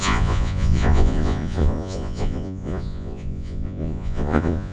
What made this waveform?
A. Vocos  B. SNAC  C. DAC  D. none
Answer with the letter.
A